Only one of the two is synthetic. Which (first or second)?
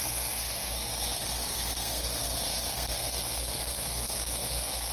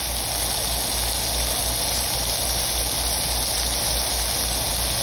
first